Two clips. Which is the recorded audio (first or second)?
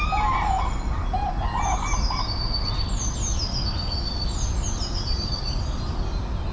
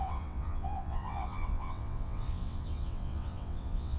first